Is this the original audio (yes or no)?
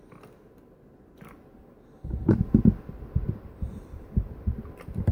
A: yes